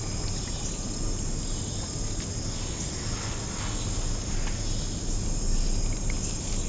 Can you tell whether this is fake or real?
real